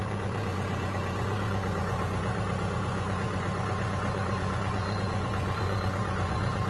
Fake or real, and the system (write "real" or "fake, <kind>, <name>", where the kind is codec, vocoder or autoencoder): fake, vocoder, Vocos